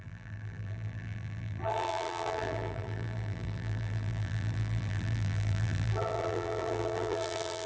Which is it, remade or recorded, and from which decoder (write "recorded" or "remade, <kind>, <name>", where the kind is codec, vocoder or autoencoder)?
remade, vocoder, BigVGAN v2